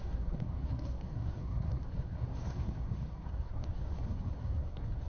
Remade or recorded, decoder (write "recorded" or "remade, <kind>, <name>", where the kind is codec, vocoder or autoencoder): remade, codec, SNAC